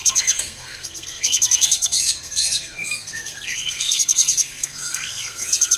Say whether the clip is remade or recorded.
remade